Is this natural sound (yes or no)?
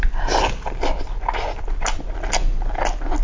yes